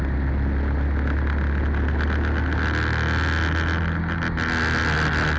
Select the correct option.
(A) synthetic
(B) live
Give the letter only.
B